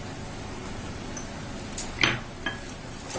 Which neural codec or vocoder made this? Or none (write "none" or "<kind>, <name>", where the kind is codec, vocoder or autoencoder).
none